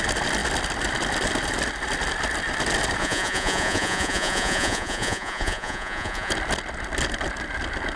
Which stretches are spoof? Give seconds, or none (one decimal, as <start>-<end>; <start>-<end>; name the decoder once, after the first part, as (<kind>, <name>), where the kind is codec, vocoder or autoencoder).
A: 3.0-6.3 (vocoder, Vocos)